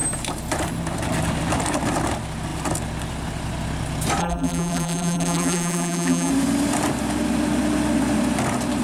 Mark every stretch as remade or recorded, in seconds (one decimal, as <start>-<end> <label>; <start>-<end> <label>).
0.0-4.2 recorded; 4.2-6.3 remade; 6.3-8.8 recorded